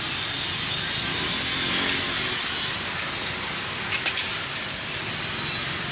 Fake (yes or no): no